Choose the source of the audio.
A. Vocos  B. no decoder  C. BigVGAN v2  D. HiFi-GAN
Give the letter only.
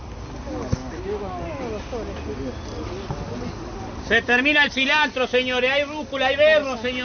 B